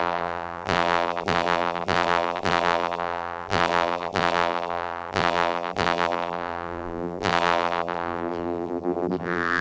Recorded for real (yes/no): no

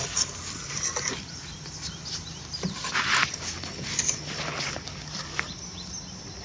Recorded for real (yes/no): yes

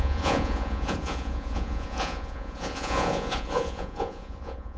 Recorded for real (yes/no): no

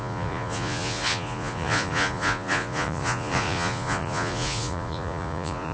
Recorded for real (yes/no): no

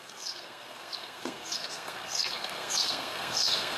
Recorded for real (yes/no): no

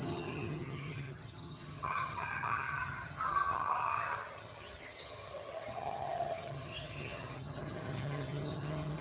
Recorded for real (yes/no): no